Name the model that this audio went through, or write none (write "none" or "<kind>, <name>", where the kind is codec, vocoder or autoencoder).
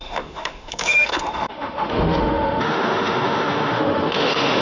autoencoder, DAC-VAE